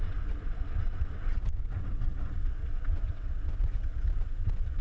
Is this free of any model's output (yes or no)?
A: no